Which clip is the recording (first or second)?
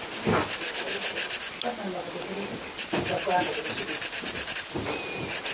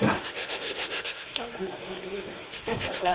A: first